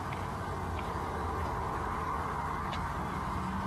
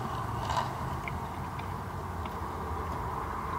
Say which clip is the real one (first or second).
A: second